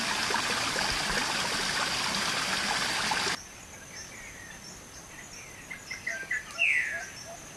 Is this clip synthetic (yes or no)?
no